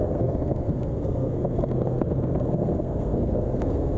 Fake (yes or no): yes